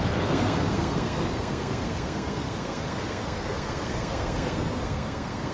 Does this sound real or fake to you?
fake